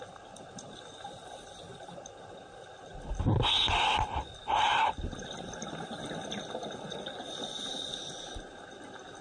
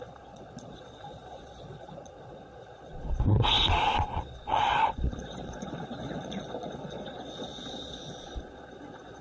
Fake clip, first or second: second